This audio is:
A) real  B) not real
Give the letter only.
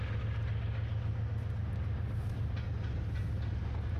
A